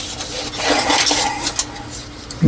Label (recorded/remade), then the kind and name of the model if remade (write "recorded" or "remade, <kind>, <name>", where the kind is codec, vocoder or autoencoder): recorded